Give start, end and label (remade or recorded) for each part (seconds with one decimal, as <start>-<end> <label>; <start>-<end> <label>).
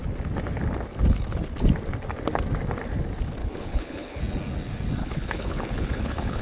0.0-3.4 recorded; 3.4-4.2 remade; 4.2-5.0 recorded; 5.0-6.4 remade